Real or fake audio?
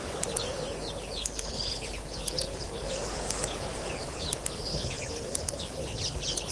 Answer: fake